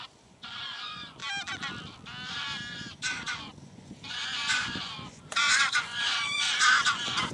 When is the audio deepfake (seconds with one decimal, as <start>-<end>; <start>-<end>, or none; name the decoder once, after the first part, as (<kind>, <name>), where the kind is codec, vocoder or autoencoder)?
0.0-1.2 (vocoder, Vocos); 2.7-7.3